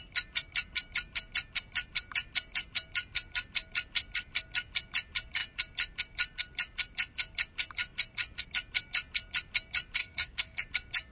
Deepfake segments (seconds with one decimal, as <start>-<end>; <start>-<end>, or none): 10.0-10.6

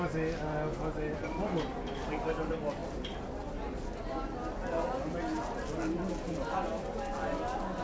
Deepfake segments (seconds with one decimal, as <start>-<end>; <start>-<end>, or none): none

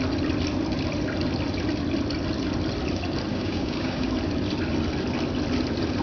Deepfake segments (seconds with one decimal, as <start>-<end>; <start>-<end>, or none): 3.3-4.1

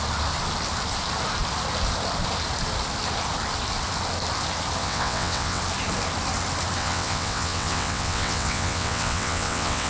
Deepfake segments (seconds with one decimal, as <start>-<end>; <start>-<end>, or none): 4.8-5.6; 6.8-9.9

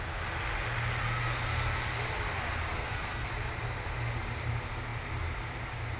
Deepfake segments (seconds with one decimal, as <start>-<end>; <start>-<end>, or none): 2.7-3.3

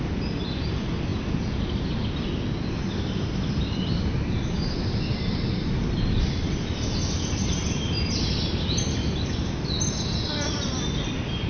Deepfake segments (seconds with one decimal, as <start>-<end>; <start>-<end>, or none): 5.8-7.6; 9.0-9.7

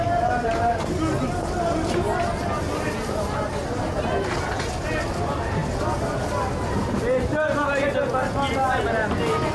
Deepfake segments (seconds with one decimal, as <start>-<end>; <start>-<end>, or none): none